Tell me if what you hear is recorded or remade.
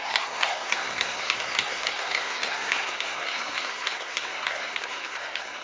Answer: remade